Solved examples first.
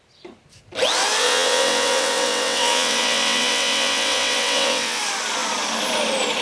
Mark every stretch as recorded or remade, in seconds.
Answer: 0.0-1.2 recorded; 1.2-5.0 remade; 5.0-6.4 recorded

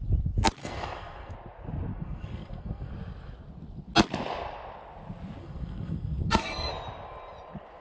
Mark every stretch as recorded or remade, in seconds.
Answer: 0.0-0.6 recorded; 0.6-1.3 remade; 1.3-1.9 recorded; 1.9-2.9 remade; 2.9-5.4 recorded; 5.4-6.7 remade; 6.7-7.8 recorded

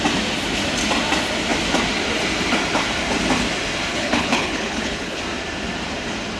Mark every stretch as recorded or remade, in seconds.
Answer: 0.0-3.9 recorded; 3.9-5.2 remade; 5.2-6.4 recorded

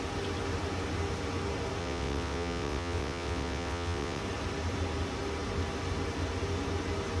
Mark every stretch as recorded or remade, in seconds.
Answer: 0.0-1.8 recorded; 1.8-4.2 remade; 4.2-7.2 recorded